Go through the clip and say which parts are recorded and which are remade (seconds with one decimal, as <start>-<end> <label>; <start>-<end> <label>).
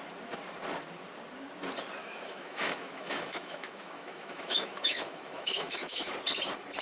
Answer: 0.0-2.0 recorded; 2.0-6.1 remade; 6.1-6.8 recorded